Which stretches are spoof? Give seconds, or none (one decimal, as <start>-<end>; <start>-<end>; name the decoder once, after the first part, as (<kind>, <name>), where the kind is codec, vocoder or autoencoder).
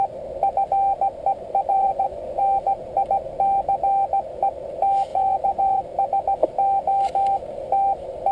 1.7-2.4 (vocoder, Vocos); 5.1-5.8